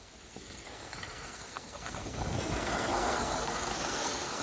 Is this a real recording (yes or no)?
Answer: no